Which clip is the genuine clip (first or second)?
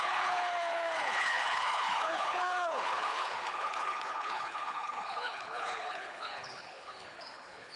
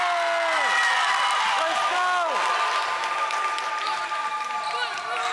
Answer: second